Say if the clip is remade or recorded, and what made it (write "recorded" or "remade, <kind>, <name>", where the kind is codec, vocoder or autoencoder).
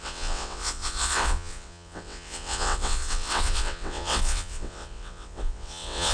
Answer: remade, vocoder, WaveNeXt